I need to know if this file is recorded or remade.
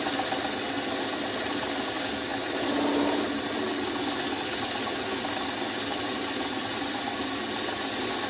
recorded